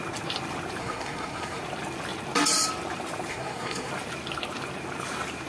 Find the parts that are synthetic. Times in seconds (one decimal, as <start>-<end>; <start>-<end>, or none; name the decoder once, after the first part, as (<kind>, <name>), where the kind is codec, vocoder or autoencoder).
0.8-1.6 (codec, SNAC); 3.3-3.9

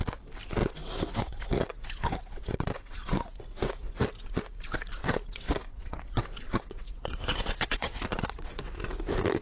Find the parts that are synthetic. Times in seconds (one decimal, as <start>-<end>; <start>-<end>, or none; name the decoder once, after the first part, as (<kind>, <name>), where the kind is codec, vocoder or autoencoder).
0.6-4.0 (vocoder, WaveNeXt); 5.0-8.7

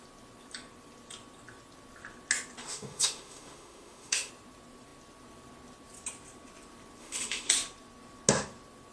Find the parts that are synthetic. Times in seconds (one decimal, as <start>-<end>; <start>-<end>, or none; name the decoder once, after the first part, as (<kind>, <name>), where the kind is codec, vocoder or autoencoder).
2.6-4.3 (autoencoder, DAC-VAE); 7.0-7.5

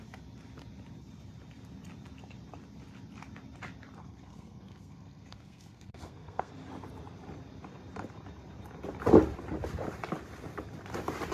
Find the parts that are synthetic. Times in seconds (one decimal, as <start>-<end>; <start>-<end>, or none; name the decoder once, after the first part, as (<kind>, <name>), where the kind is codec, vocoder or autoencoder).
4.0-6.5 (codec, SNAC)